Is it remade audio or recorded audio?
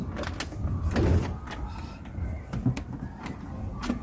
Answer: recorded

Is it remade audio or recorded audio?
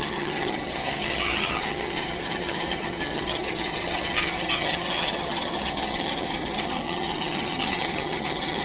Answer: remade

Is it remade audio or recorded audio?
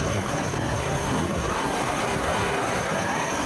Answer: remade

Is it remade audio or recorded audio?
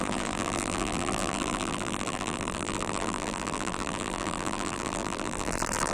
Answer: remade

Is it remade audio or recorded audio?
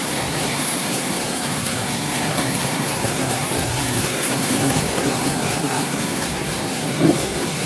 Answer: remade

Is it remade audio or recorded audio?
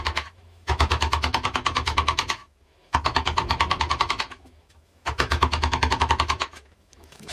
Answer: remade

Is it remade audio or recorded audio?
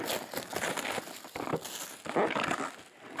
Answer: recorded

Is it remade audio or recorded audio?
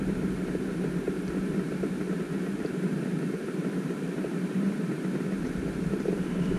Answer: remade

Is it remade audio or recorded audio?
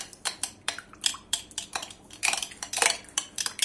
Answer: remade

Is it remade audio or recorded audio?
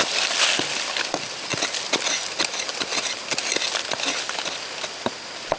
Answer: recorded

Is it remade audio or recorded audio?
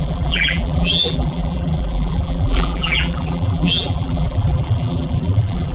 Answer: remade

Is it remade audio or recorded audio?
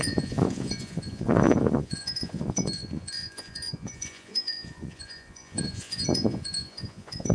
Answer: remade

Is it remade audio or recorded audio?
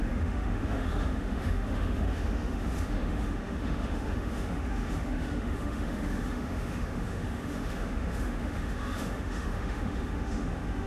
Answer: remade